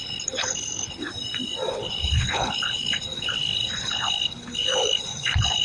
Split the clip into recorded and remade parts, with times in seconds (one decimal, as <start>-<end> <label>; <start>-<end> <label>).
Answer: 0.0-1.1 remade; 1.1-1.7 recorded; 1.7-5.6 remade